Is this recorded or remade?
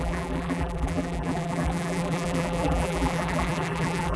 remade